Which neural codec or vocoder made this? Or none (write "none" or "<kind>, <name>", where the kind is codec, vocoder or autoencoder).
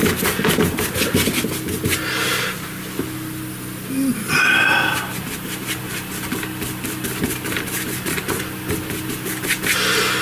none